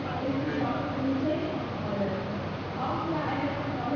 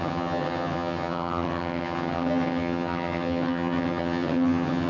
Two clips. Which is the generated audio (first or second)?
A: second